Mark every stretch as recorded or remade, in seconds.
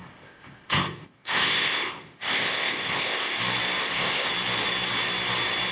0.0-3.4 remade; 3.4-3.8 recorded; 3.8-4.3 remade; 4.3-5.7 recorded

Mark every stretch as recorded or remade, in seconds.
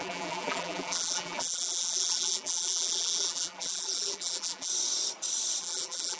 0.0-4.7 remade; 4.7-5.6 recorded; 5.6-6.2 remade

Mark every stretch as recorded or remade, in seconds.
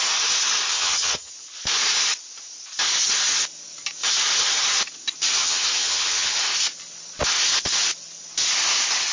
0.0-0.7 recorded; 0.7-1.3 remade; 1.3-5.4 recorded; 5.4-6.4 remade; 6.4-9.1 recorded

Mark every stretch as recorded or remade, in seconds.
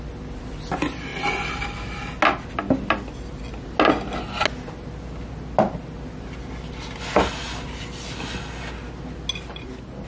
0.0-10.1 recorded